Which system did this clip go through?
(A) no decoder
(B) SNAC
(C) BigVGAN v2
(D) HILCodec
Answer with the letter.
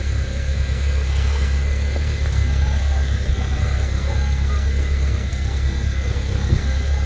B